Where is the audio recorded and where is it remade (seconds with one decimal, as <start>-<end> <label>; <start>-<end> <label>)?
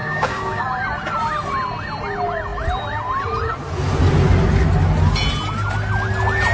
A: 0.0-0.6 remade; 0.6-6.5 recorded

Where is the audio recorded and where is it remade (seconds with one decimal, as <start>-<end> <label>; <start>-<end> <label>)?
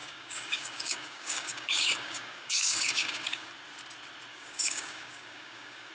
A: 0.0-3.5 remade; 3.5-4.3 recorded; 4.3-5.9 remade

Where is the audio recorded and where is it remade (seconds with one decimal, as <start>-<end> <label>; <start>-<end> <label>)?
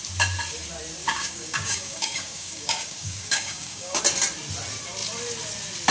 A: 0.0-1.0 recorded; 1.0-4.0 remade; 4.0-5.9 recorded